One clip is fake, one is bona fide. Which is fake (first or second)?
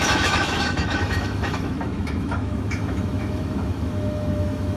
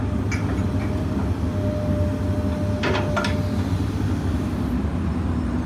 first